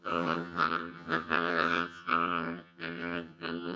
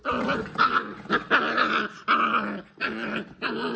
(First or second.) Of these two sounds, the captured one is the second